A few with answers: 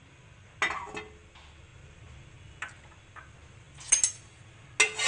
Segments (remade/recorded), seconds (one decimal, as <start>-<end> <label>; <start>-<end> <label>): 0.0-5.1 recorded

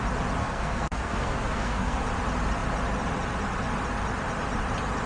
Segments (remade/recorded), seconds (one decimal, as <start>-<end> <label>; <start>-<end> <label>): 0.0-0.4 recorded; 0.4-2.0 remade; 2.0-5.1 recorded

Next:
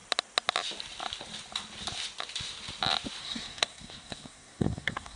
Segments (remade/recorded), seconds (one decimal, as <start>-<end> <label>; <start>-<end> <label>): 0.0-3.2 recorded; 3.2-5.2 remade

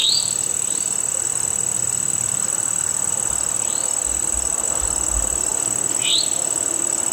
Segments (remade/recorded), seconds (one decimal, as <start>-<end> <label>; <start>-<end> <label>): 0.0-7.1 recorded

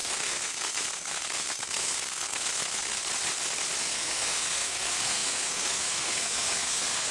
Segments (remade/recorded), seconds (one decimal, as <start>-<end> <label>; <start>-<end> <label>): 0.0-3.0 remade; 3.0-3.8 recorded; 3.8-7.1 remade